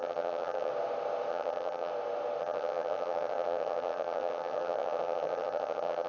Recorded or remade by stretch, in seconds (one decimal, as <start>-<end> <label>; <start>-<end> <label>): 0.0-0.7 remade; 0.7-1.3 recorded; 1.3-1.9 remade; 1.9-2.4 recorded; 2.4-6.1 remade